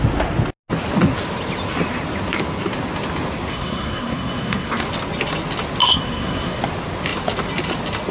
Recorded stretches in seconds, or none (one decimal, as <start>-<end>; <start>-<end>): 0.0-3.5; 4.7-5.8; 6.6-8.1